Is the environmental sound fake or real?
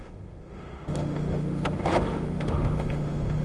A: fake